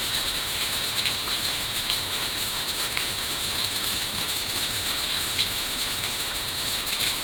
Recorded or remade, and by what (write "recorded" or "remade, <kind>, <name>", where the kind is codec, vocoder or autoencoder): remade, autoencoder, DAC-VAE